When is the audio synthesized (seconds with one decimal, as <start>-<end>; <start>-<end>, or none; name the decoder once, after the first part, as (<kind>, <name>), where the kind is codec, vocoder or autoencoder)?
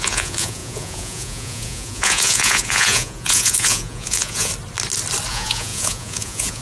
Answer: 0.0-4.5 (vocoder, Vocos); 5.3-6.6